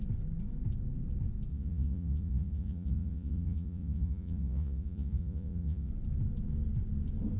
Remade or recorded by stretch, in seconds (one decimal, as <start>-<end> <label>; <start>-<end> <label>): 0.0-1.5 recorded; 1.5-5.9 remade; 5.9-7.4 recorded